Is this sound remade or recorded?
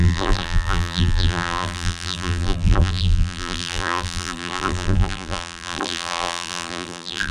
remade